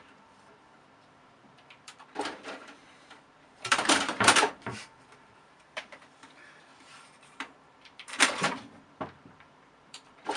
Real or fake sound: fake